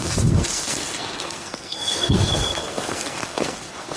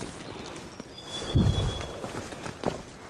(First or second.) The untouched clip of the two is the second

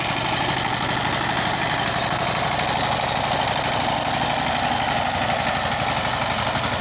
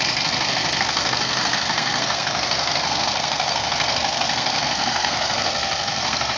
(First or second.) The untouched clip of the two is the first